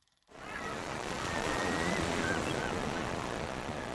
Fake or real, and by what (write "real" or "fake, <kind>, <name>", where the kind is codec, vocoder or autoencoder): fake, vocoder, Vocos